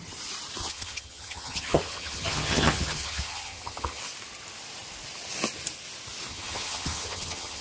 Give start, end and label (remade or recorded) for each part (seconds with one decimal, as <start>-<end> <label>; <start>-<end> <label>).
0.0-0.6 recorded; 0.6-4.0 remade; 4.0-6.3 recorded; 6.3-7.6 remade